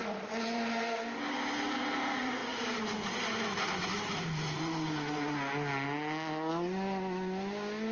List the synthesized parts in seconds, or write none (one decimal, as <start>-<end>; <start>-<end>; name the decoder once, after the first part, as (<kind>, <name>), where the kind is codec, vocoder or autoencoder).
none